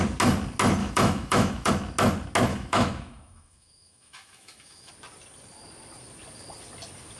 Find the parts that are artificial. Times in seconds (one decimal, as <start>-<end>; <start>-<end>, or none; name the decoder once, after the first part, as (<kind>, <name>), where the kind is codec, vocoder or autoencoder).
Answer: 0.8-1.7 (autoencoder, DAC-VAE); 2.5-4.9